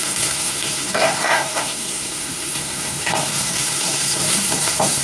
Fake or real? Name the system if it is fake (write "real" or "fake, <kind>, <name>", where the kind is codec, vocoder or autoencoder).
fake, codec, SNAC